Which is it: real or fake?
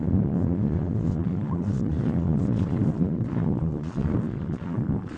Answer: fake